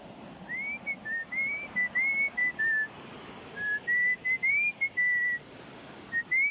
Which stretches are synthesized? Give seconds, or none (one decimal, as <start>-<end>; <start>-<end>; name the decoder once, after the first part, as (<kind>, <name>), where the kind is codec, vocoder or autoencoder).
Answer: none